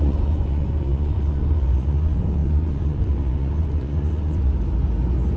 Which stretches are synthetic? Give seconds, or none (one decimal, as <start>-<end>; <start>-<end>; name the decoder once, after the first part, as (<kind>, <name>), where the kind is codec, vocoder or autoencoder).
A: 0.0-4.5 (vocoder, Vocos)

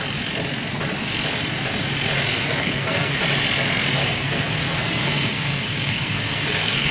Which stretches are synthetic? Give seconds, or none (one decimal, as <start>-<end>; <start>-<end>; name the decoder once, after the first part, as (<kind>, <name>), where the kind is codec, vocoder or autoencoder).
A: 2.3-3.2 (codec, SNAC); 4.0-6.9

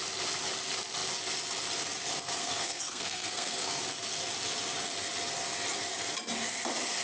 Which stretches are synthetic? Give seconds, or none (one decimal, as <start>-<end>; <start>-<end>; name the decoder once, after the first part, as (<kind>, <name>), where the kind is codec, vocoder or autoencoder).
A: 2.4-3.8 (codec, SNAC)

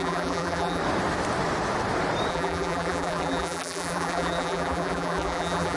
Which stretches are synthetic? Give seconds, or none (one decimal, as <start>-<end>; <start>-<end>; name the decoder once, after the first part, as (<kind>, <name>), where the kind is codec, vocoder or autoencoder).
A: 0.0-0.8 (vocoder, BigVGAN v2); 2.3-5.8

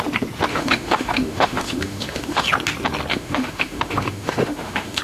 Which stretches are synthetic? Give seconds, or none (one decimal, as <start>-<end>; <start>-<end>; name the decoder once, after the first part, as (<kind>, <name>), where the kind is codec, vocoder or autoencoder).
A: 0.5-2.5 (autoencoder, DAC-VAE); 3.1-5.0